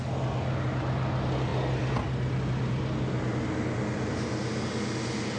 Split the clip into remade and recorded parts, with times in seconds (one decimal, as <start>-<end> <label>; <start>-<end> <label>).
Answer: 0.0-5.4 recorded